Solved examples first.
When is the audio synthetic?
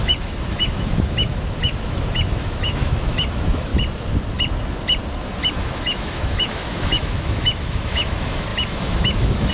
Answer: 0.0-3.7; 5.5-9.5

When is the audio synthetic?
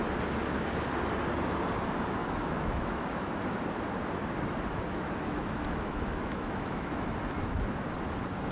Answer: 2.2-3.3; 4.9-7.1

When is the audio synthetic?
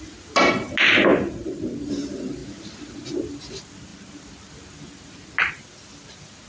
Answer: none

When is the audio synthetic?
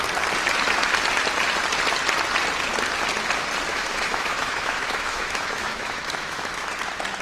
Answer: 3.7-6.7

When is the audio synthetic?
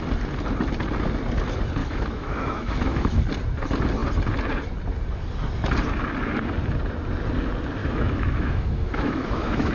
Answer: 1.8-3.2; 7.8-9.7